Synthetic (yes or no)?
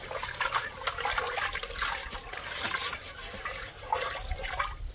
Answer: no